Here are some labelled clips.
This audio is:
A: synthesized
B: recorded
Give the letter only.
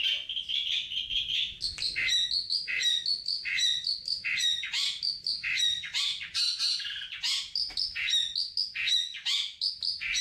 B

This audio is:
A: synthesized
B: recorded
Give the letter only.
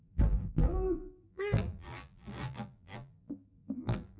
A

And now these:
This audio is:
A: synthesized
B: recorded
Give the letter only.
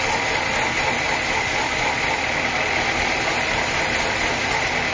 B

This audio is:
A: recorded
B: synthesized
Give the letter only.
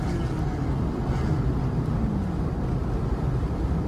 A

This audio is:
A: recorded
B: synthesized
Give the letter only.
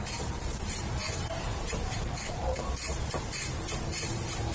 B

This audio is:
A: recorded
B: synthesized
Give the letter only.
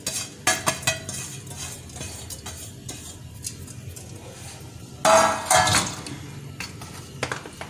A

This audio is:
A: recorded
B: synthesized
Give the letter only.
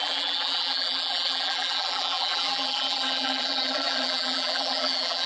B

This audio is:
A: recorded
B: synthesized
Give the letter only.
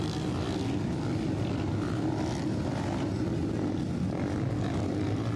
A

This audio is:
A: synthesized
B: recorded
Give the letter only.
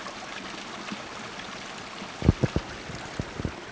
B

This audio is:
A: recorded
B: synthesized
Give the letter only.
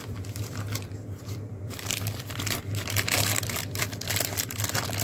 B